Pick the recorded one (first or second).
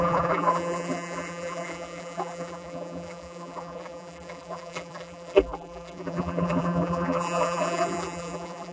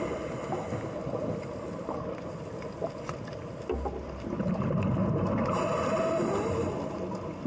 second